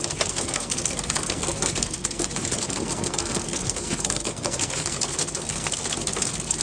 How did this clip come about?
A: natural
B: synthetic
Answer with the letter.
B